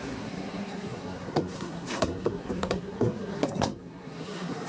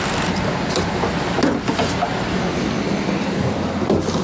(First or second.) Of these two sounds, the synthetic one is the first